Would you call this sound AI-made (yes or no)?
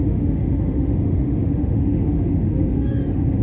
yes